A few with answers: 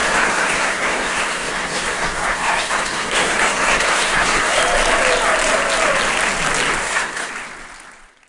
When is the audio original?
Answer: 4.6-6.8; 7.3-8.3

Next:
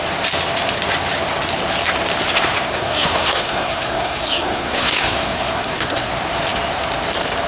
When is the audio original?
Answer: 0.0-2.7; 6.1-7.5

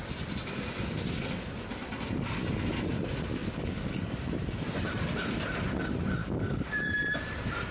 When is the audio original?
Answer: 0.0-3.4; 4.2-6.2; 6.9-7.7

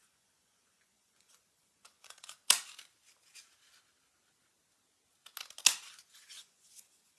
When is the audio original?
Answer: 2.4-5.9